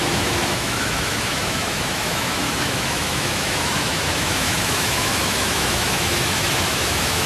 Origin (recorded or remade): remade